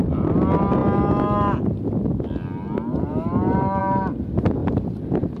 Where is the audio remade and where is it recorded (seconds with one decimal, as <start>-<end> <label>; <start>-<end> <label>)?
0.0-5.4 recorded